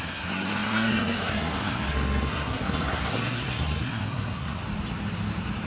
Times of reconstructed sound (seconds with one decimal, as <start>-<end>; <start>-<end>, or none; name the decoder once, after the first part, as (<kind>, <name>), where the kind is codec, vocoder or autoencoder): 0.0-4.6 (codec, SNAC)